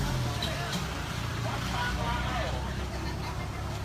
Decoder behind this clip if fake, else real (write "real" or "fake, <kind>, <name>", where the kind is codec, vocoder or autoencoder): real